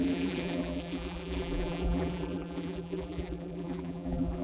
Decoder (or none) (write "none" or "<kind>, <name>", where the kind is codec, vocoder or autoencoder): vocoder, BigVGAN v2